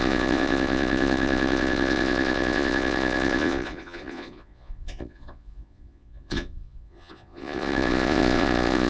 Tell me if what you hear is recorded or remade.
remade